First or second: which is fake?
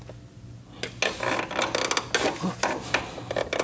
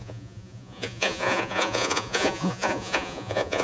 second